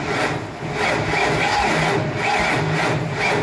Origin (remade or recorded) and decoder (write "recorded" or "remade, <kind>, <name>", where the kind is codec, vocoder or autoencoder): recorded